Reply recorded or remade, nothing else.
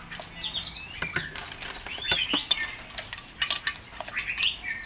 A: recorded